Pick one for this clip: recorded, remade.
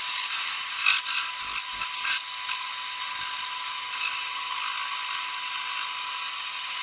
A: recorded